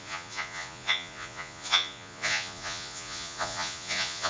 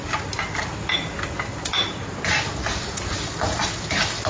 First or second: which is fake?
first